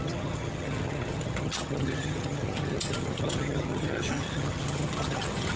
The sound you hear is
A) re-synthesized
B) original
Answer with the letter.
A